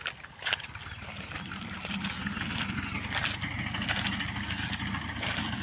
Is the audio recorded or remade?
recorded